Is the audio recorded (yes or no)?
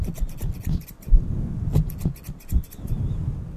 yes